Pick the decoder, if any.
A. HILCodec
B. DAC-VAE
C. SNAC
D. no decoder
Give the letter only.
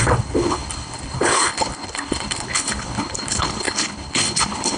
A